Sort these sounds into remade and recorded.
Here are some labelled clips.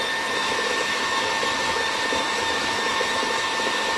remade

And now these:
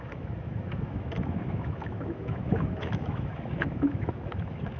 remade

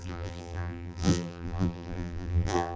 remade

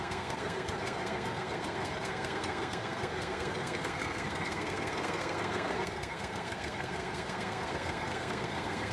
remade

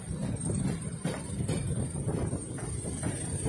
remade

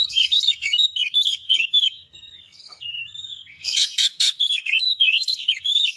remade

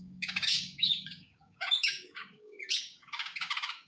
remade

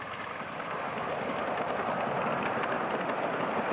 recorded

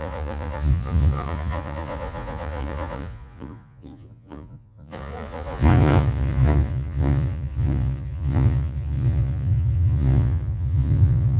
remade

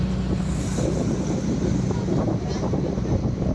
recorded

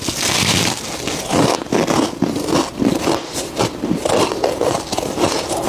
recorded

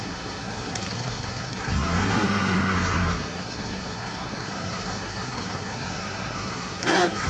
remade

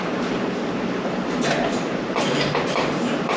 remade